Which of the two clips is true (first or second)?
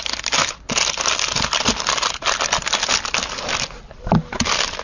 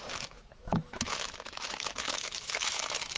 first